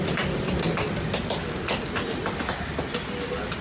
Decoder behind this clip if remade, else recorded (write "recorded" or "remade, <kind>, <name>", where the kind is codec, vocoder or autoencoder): recorded